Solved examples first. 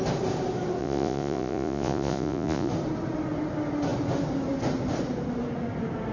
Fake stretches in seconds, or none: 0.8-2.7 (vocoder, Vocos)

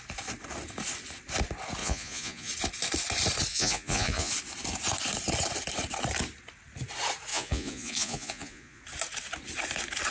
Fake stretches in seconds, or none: 1.8-2.5 (vocoder, Vocos); 3.5-4.3; 7.3-8.8